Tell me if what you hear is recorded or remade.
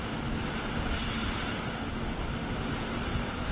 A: recorded